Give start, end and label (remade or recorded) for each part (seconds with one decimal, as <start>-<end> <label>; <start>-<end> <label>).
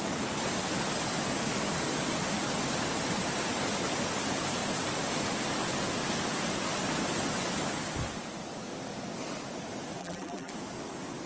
0.0-10.0 recorded; 10.0-10.5 remade; 10.5-11.3 recorded